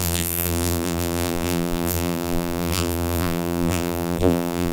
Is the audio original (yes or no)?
no